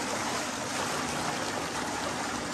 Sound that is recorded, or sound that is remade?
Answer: recorded